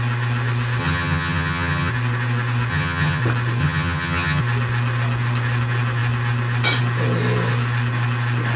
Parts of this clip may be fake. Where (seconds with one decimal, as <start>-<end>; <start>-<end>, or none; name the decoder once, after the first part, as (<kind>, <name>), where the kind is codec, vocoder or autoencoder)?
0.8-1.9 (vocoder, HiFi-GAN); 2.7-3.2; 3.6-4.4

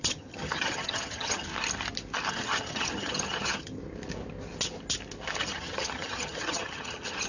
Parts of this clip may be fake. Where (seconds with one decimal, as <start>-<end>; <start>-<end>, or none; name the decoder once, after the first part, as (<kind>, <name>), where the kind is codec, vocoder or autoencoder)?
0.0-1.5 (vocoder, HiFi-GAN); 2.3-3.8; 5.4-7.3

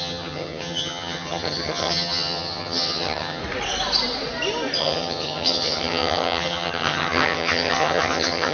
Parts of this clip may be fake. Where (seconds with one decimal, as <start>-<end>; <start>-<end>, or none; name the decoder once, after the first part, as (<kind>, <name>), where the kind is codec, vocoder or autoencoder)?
0.0-3.4 (vocoder, HiFi-GAN); 4.8-8.5

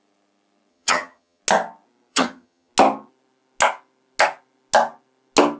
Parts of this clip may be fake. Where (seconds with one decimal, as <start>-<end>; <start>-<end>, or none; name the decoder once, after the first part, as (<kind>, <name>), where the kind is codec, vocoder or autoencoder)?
0.7-1.4 (vocoder, HiFi-GAN); 2.1-2.7

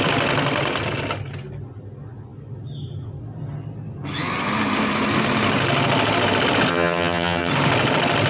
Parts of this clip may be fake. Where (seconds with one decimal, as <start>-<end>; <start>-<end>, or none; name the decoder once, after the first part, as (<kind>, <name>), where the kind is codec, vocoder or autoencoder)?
6.7-7.5 (vocoder, HiFi-GAN)

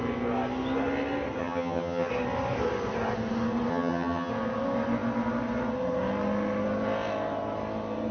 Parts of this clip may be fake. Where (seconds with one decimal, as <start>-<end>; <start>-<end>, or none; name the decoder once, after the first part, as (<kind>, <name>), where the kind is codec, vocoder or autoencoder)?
1.4-2.1 (vocoder, HiFi-GAN); 3.7-4.3

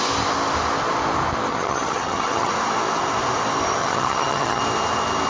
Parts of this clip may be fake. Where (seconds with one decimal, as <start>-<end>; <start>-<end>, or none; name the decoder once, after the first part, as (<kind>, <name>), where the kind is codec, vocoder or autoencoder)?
1.5-2.5 (vocoder, HiFi-GAN); 3.8-4.6

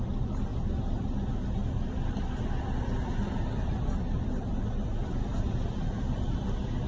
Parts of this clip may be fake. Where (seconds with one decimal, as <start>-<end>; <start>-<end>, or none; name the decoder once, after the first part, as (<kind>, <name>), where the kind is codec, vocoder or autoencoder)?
none